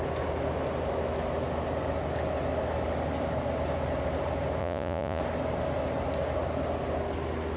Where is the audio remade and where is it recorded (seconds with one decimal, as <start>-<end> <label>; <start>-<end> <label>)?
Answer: 0.0-4.6 recorded; 4.6-5.2 remade; 5.2-7.6 recorded